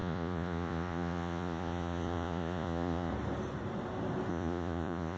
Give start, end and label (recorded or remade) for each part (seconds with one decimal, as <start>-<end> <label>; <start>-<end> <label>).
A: 0.0-3.1 remade; 3.1-4.3 recorded; 4.3-5.2 remade